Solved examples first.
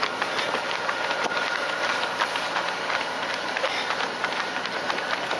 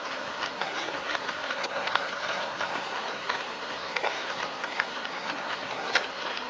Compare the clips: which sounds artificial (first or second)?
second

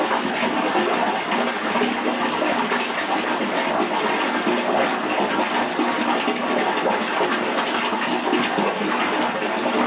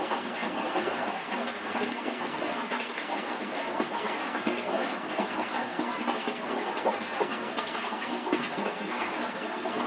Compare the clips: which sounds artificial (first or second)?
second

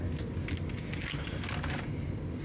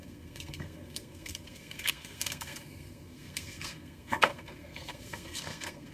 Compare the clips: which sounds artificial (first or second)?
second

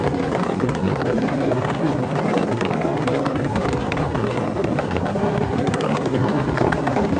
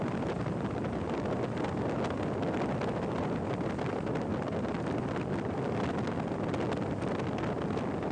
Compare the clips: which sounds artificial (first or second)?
first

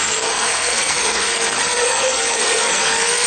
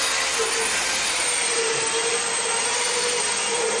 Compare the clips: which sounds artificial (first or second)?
first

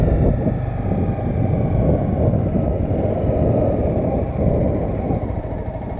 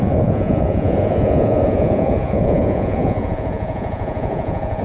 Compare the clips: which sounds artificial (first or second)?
second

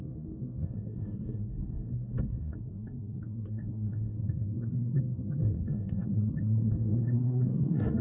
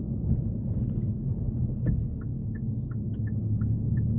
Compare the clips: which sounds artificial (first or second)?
first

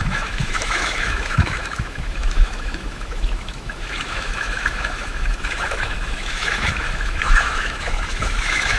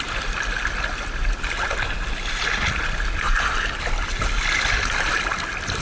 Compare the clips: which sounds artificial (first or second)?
first